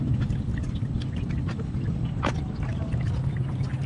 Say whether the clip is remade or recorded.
recorded